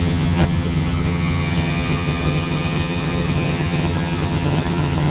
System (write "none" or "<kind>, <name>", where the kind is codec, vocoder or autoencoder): vocoder, HiFi-GAN